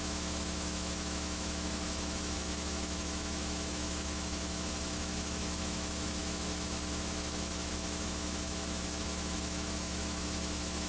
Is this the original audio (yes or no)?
no